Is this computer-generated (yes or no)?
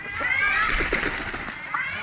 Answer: no